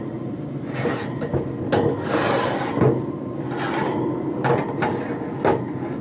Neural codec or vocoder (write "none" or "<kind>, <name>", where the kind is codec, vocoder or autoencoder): none